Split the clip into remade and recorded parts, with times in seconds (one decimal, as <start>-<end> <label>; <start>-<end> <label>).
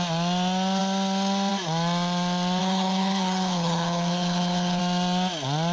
0.0-2.6 recorded; 2.6-4.8 remade; 4.8-5.7 recorded